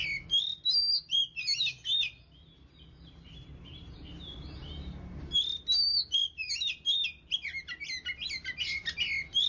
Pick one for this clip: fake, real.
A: real